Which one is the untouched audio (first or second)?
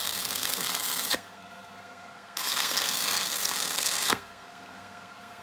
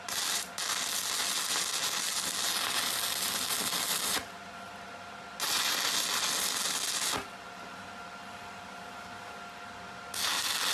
second